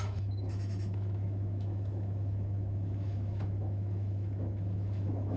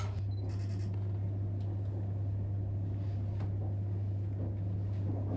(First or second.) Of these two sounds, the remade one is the first